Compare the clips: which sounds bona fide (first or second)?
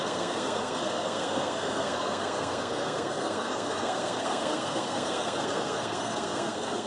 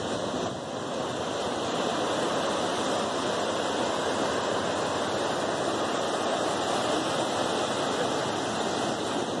second